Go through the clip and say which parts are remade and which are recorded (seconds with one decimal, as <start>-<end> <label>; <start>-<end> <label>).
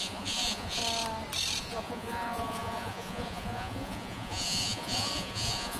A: 0.0-0.8 remade; 0.8-1.6 recorded; 1.6-5.8 remade